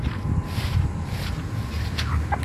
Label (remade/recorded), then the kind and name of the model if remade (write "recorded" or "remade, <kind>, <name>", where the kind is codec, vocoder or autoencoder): recorded